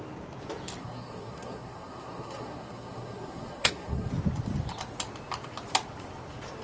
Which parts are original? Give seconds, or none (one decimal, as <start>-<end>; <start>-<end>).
0.0-0.8; 4.1-6.6